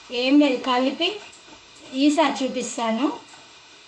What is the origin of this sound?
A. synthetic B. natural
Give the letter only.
A